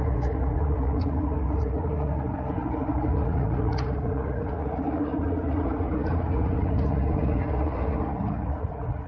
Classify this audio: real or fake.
fake